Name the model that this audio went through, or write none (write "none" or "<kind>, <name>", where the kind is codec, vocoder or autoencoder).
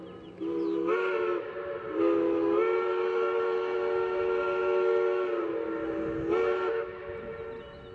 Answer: none